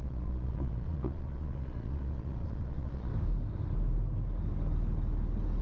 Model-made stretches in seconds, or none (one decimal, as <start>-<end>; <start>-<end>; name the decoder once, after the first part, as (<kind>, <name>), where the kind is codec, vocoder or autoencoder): 0.0-3.1 (vocoder, Vocos)